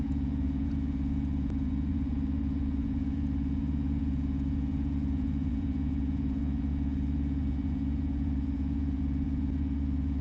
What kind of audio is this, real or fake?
fake